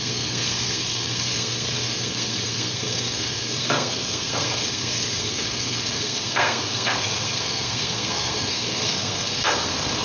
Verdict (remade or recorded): remade